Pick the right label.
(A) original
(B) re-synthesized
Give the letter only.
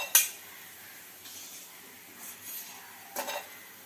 A